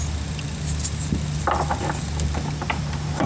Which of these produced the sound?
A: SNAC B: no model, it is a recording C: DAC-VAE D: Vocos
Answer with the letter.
B